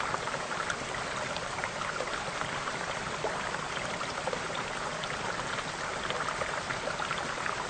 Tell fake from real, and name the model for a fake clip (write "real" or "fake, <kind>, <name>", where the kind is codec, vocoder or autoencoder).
real